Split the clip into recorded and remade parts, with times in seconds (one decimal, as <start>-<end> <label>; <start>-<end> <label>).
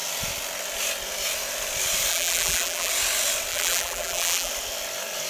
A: 0.0-2.1 recorded; 2.1-2.9 remade; 2.9-3.5 recorded; 3.5-4.5 remade; 4.5-5.3 recorded